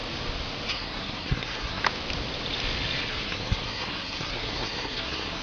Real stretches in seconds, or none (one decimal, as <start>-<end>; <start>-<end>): 0.0-0.7; 1.8-3.1